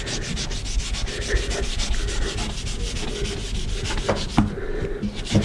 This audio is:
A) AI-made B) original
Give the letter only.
B